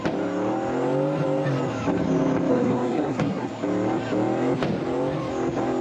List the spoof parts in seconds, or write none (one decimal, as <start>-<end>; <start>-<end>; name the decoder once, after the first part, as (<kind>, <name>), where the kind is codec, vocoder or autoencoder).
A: 2.5-3.5 (codec, SNAC)